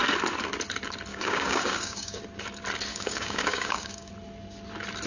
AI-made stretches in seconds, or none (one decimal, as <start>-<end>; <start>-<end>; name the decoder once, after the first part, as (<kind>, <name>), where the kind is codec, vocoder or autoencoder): 1.1-2.2 (codec, DAC); 2.9-4.1